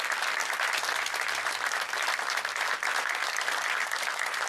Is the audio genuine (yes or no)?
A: yes